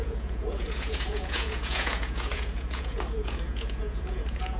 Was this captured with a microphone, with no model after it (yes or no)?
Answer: no